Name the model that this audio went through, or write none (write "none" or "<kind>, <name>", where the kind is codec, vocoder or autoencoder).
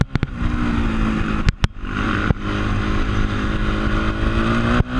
none